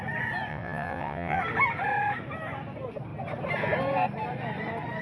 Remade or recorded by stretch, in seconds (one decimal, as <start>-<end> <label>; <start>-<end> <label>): 0.0-0.5 recorded; 0.5-1.4 remade; 1.4-5.0 recorded

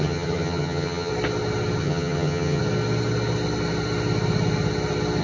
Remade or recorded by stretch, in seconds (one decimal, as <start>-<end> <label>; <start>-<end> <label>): 0.0-1.1 remade; 1.1-1.8 recorded; 1.8-2.6 remade; 2.6-5.2 recorded

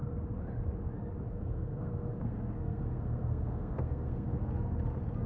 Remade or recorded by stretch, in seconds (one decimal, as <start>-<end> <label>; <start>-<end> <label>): 0.0-1.3 recorded; 1.3-4.5 remade; 4.5-5.3 recorded

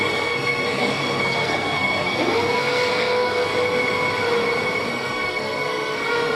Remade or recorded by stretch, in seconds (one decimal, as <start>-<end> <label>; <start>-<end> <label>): 0.0-3.5 remade; 3.5-4.9 recorded; 4.9-6.4 remade

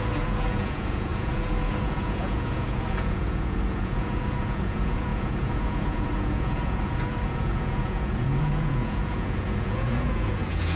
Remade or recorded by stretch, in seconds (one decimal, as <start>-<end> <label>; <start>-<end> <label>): 0.0-10.8 remade

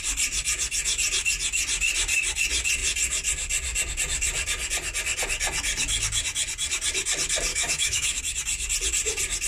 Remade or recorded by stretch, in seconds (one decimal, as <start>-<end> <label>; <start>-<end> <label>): 0.0-7.5 recorded; 7.5-8.2 remade; 8.2-9.5 recorded